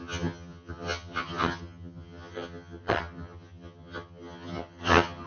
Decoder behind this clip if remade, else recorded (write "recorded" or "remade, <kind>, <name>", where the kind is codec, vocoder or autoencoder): remade, vocoder, HiFi-GAN